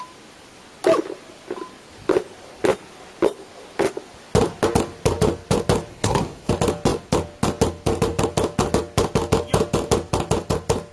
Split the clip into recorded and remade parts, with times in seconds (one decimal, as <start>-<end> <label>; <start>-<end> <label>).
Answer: 0.0-5.9 recorded; 5.9-6.5 remade; 6.5-10.9 recorded